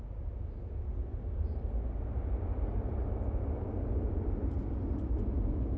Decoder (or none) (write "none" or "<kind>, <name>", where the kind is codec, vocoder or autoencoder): none